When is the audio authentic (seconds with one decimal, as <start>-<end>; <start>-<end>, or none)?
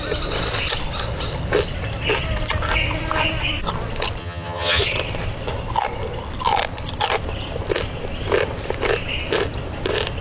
0.0-4.2; 4.8-10.2